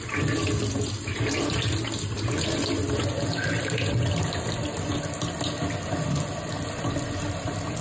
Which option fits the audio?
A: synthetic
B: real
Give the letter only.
B